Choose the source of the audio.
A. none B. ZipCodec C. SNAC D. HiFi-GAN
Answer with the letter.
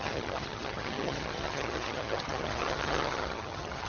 D